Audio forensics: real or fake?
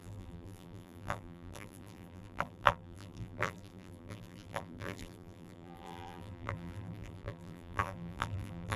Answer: fake